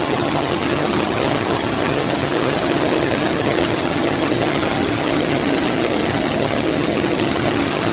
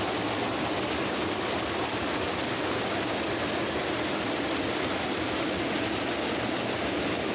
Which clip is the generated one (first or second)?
first